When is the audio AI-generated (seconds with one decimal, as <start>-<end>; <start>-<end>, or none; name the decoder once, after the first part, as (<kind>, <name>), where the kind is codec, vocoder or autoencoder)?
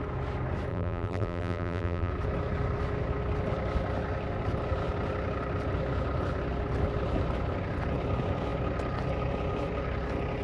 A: 0.7-2.1 (vocoder, BigVGAN v2)